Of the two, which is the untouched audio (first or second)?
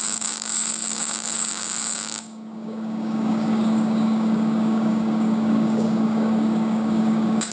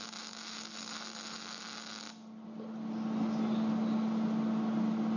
second